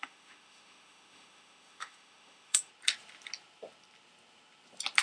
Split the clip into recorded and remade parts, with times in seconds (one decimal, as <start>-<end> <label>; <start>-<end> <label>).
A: 0.0-2.7 remade; 2.7-5.0 recorded